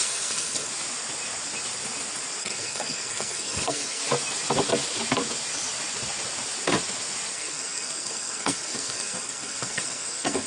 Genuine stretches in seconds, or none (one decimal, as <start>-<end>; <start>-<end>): 0.7-2.4; 4.0-7.3